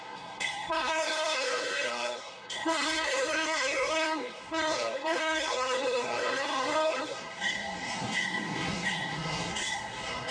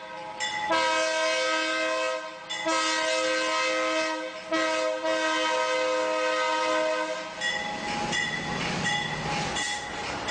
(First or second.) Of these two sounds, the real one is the second